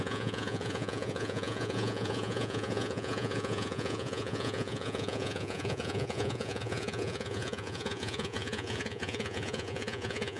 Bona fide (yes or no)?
no